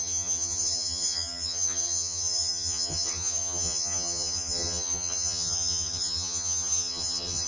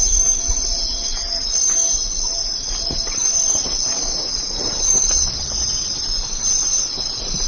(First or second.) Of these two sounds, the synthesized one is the first